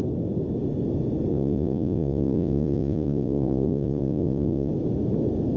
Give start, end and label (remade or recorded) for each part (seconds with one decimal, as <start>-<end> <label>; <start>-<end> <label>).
0.0-1.3 recorded; 1.3-4.7 remade; 4.7-5.6 recorded

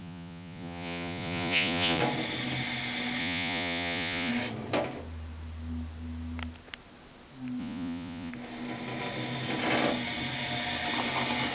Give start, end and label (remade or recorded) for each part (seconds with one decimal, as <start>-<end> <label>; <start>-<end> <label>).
0.0-2.0 remade; 2.0-3.2 recorded; 3.2-4.3 remade; 4.3-7.6 recorded; 7.6-8.3 remade; 8.3-11.5 recorded

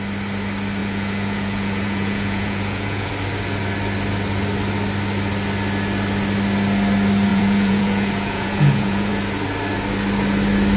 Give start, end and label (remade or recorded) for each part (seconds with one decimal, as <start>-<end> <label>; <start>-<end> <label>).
0.0-0.8 recorded; 0.8-3.1 remade; 3.1-7.3 recorded; 7.3-9.1 remade; 9.1-10.8 recorded

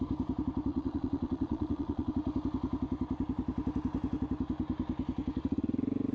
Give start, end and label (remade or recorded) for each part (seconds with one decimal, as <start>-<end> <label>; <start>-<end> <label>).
0.0-0.7 recorded; 0.7-2.1 remade; 2.1-6.1 recorded

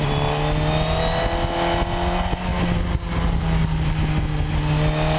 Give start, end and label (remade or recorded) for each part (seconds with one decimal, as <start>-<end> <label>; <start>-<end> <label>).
0.0-5.2 recorded